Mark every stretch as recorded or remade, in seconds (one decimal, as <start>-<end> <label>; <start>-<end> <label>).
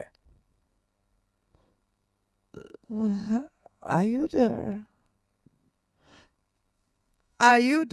0.0-7.9 remade